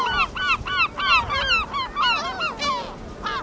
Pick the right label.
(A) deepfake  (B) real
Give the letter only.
B